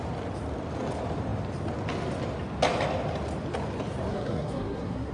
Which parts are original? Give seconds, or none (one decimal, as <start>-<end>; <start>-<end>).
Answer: 0.0-4.1